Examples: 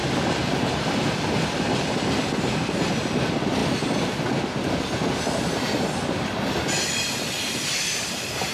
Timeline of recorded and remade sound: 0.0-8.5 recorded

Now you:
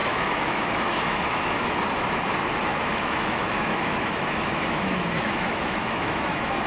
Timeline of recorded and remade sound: 0.0-1.8 remade; 1.8-2.7 recorded; 2.7-6.7 remade